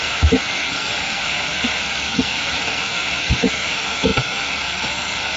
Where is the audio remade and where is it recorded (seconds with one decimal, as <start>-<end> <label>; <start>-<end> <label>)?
0.0-5.4 remade